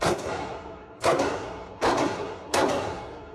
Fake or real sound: fake